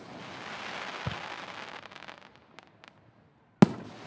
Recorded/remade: recorded